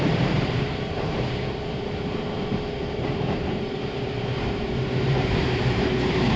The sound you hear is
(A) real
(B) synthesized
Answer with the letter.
B